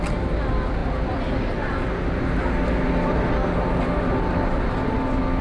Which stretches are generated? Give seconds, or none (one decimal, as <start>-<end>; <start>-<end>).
none